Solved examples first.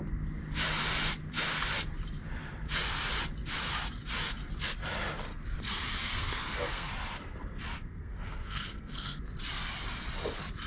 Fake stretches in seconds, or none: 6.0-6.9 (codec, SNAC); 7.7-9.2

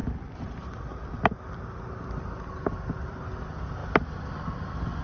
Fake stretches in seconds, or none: none